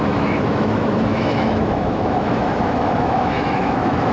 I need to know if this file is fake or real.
fake